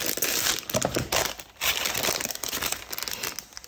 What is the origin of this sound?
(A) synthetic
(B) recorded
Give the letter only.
B